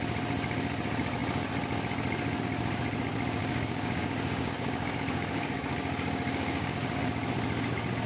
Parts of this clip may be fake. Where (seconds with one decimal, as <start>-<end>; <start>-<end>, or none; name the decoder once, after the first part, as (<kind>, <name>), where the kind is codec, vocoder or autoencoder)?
3.4-7.0 (codec, DAC)